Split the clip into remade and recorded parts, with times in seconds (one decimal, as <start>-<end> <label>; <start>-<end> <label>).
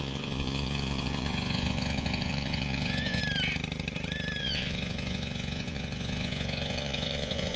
0.0-3.2 remade; 3.2-4.4 recorded; 4.4-7.6 remade